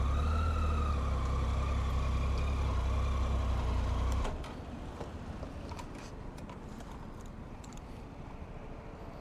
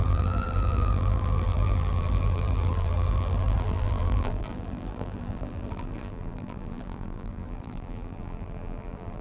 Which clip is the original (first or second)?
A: first